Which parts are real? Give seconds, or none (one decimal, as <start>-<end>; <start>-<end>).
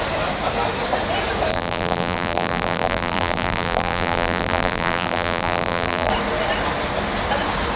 0.0-1.5; 6.1-7.8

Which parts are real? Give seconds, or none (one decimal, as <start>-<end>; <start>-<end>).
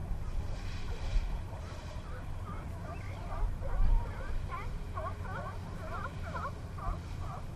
2.4-7.6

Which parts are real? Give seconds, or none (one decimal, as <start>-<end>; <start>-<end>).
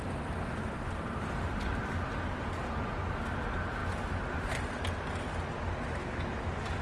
0.0-6.8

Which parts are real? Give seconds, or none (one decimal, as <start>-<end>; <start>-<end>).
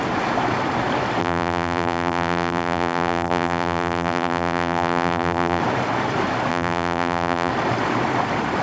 0.0-1.2; 5.6-6.5; 7.5-8.6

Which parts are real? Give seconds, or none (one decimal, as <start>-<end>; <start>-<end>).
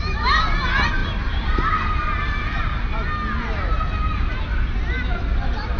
0.0-1.0; 2.9-5.8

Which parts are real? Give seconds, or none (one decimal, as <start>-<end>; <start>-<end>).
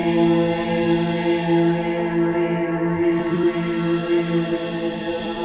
0.0-3.2; 4.0-5.0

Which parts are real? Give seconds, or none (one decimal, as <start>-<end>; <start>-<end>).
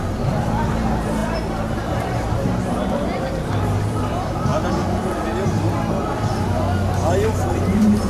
4.5-7.5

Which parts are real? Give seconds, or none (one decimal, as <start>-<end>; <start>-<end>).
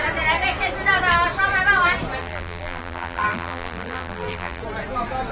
0.0-2.2; 4.6-5.3